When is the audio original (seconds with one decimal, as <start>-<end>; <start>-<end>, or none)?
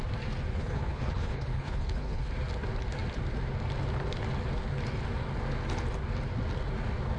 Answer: 0.0-0.5; 2.3-7.2